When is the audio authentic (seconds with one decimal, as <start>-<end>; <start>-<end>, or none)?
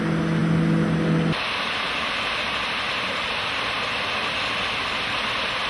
0.0-5.7